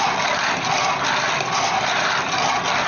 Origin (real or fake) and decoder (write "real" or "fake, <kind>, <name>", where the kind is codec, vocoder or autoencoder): fake, vocoder, BigVGAN v2